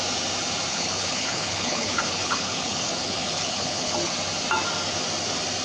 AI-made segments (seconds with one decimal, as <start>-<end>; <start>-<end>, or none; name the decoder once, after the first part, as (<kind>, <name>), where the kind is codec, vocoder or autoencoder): 0.7-4.1 (codec, HILCodec)